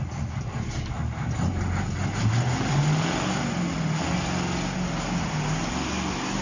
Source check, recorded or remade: recorded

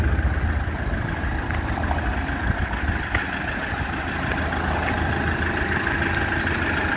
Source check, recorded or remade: recorded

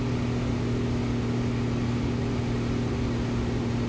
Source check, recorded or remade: recorded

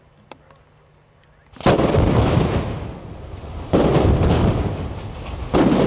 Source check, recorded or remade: recorded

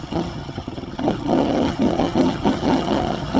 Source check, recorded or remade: remade